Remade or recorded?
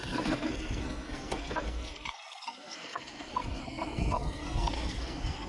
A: remade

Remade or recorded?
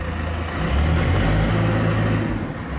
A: recorded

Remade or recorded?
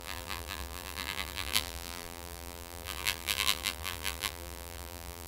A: remade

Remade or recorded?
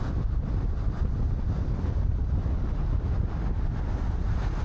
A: recorded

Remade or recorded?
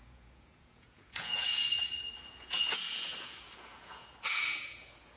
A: remade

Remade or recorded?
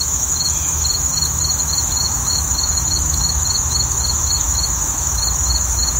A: remade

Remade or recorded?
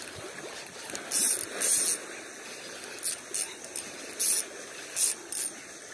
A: recorded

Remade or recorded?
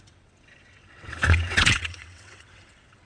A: remade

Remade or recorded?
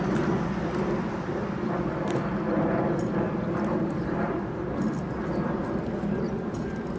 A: recorded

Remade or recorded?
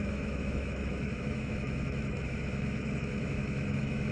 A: remade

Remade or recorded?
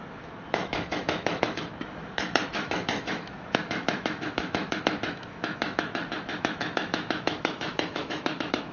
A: remade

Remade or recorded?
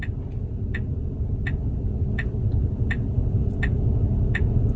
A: recorded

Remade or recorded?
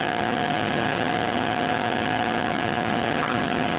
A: remade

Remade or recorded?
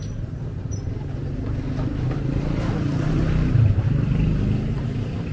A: remade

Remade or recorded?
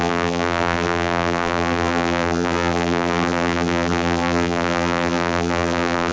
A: remade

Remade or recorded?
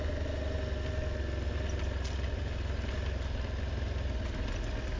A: recorded